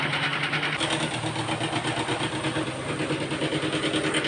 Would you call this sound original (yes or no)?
yes